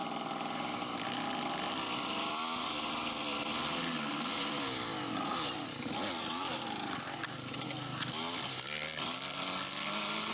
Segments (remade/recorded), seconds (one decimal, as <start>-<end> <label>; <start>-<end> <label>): 0.0-10.3 recorded